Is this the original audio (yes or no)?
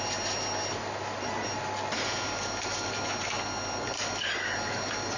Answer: yes